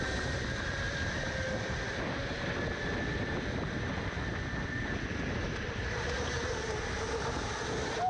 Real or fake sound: real